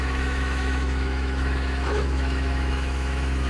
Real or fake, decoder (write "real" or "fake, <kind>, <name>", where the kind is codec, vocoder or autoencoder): fake, autoencoder, DAC-VAE